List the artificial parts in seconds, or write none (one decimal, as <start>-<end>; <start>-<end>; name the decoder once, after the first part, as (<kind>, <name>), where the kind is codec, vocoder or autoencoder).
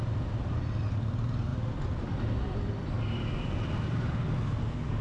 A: none